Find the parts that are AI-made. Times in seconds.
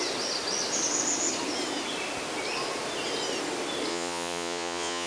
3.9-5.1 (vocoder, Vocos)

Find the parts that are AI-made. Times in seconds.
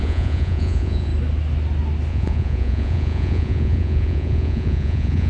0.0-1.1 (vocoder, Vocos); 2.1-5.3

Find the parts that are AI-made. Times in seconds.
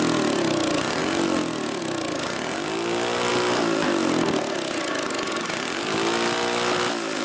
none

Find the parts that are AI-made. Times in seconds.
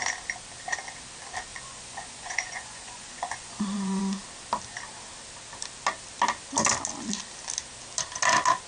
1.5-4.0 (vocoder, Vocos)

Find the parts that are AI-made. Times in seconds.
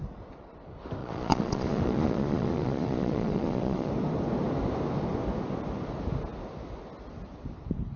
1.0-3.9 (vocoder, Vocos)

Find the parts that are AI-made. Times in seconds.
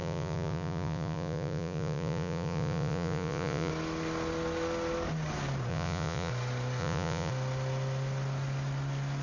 0.0-3.7 (vocoder, Vocos); 5.7-6.3; 6.8-7.3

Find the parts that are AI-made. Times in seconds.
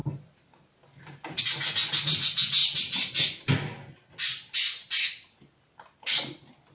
none